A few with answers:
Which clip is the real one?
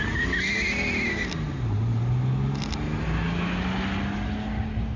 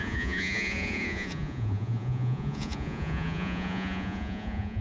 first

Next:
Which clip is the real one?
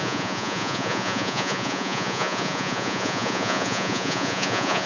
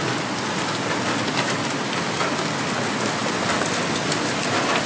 second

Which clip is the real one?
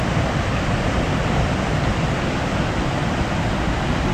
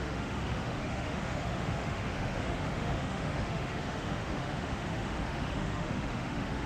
first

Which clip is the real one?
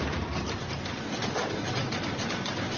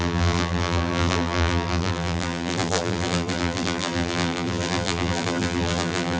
first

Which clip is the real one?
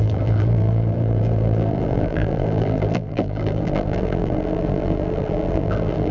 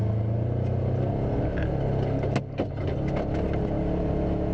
second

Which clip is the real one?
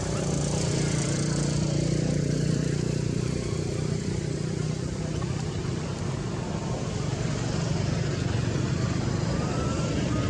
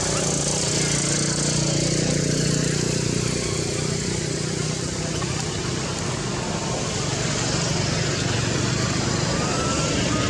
second